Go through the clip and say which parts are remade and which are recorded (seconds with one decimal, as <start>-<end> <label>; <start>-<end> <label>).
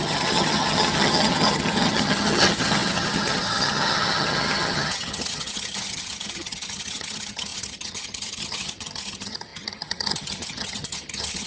0.0-11.5 remade